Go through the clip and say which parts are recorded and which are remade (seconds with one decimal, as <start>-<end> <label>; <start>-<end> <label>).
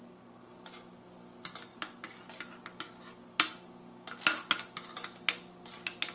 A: 0.0-6.1 recorded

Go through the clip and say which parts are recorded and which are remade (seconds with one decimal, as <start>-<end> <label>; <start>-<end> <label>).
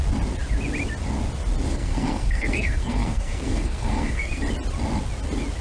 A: 0.0-1.7 recorded; 1.7-4.4 remade; 4.4-5.6 recorded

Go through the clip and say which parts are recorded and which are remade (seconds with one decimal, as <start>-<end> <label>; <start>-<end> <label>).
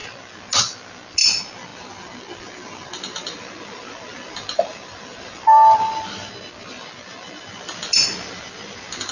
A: 0.0-1.7 recorded; 1.7-6.3 remade; 6.3-9.1 recorded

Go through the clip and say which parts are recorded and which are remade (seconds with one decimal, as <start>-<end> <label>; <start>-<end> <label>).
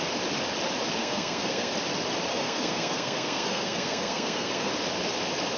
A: 0.0-1.0 recorded; 1.0-1.7 remade; 1.7-2.3 recorded; 2.3-4.7 remade; 4.7-5.6 recorded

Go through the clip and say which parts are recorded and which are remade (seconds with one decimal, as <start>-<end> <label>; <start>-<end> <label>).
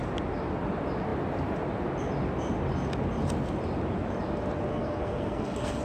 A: 0.0-4.7 recorded; 4.7-5.8 remade